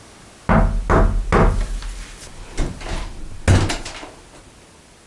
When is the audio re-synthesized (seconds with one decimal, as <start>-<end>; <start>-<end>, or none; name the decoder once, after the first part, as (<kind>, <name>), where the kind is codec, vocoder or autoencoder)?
none